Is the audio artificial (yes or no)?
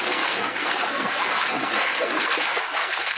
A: yes